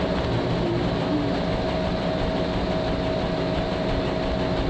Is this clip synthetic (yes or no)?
no